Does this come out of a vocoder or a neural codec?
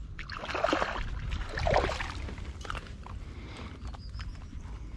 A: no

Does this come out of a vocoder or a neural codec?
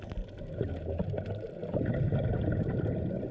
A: no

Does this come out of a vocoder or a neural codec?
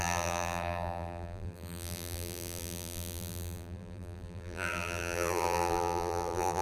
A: yes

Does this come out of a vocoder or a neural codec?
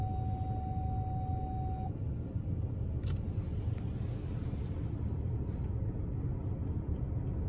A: no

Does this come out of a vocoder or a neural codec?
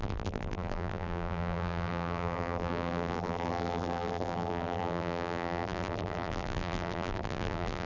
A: yes